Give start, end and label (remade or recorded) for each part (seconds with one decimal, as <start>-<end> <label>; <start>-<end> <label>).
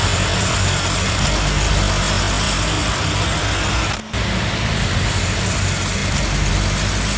0.0-7.2 recorded